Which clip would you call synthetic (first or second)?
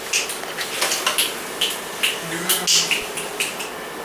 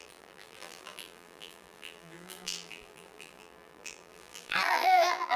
second